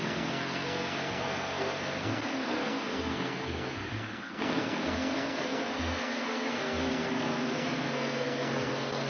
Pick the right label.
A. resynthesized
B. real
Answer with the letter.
A